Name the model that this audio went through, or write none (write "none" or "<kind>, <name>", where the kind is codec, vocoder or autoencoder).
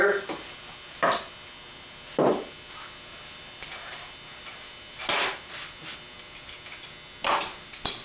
none